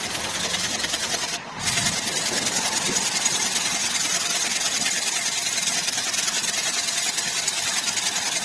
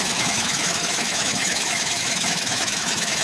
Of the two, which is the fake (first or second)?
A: second